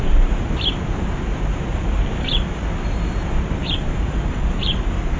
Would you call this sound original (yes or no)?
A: no